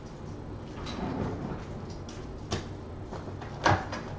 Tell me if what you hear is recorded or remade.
recorded